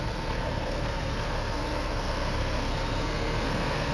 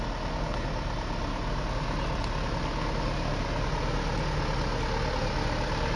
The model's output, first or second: first